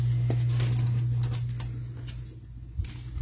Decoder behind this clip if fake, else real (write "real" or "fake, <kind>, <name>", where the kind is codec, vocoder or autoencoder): real